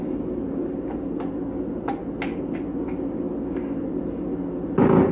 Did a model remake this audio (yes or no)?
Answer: no